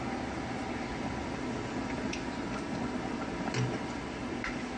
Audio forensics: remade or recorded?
recorded